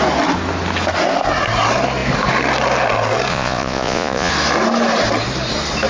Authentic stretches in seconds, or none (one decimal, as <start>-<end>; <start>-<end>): 0.0-3.3; 4.3-5.9